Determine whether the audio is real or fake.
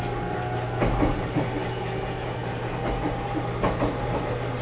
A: real